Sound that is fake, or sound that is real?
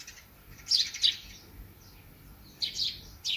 real